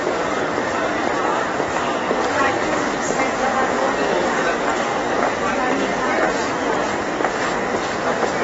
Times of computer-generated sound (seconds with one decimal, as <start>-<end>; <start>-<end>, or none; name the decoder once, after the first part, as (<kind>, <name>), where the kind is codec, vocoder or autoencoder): 1.3-3.0 (codec, DAC)